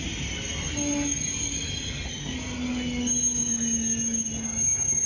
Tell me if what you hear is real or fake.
real